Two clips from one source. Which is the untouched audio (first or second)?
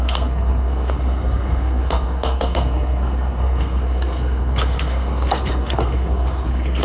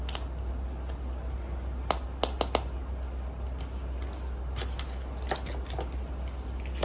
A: second